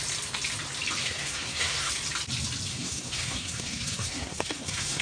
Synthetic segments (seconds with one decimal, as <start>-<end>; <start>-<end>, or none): 1.0-1.9; 2.7-5.0

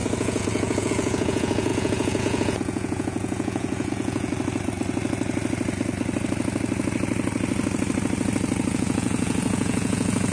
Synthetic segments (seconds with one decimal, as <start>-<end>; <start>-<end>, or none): 0.0-4.3; 8.7-10.3